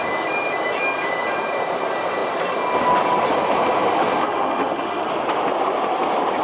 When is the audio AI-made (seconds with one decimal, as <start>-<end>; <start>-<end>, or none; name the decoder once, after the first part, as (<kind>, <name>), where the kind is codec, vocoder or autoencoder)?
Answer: 4.2-5.1 (autoencoder, DAC-VAE)